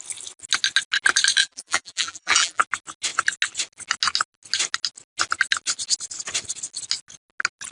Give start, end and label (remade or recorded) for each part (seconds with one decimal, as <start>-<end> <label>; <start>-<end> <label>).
0.0-1.4 recorded; 1.4-2.6 remade; 2.6-7.7 recorded